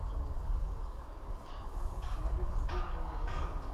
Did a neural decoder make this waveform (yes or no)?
yes